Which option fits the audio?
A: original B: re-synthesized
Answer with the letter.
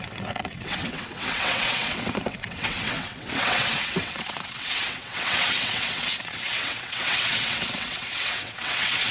B